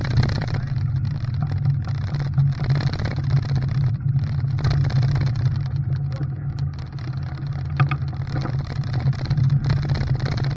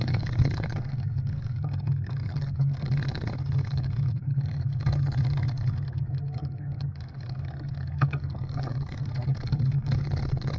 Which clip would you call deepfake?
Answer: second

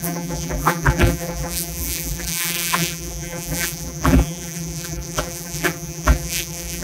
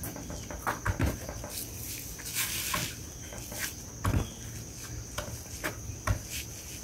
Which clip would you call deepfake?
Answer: first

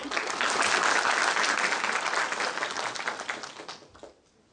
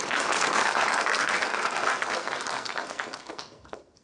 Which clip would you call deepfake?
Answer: second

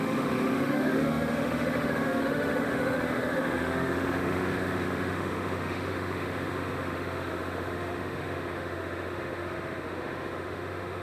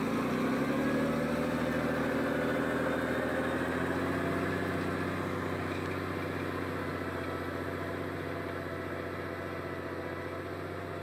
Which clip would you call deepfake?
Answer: first